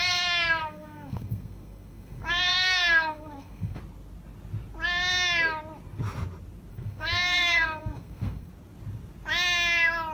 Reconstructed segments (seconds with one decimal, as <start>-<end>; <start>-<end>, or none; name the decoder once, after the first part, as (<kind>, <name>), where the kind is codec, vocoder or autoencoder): 0.6-3.8 (codec, SNAC); 6.7-8.5